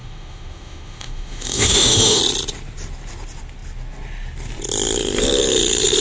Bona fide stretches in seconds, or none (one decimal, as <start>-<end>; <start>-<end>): 2.2-6.0